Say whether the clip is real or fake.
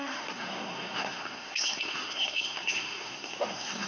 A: fake